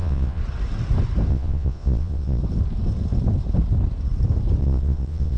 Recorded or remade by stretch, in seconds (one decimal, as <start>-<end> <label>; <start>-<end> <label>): 0.0-0.4 remade; 0.4-1.3 recorded; 1.3-2.4 remade; 2.4-4.6 recorded; 4.6-5.4 remade